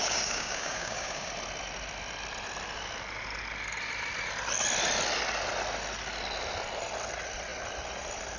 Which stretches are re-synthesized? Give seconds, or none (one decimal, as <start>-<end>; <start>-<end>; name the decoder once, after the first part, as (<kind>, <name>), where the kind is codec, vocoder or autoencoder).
0.0-1.3 (codec, DAC)